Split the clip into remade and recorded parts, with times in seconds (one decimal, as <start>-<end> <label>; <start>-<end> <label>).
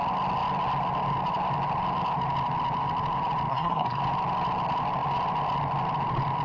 0.0-3.5 recorded; 3.5-4.0 remade; 4.0-6.4 recorded